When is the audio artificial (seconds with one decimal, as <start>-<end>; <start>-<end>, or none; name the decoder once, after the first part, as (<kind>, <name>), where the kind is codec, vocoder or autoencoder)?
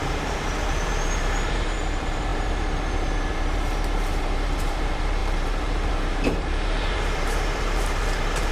0.0-8.5 (vocoder, BigVGAN v2)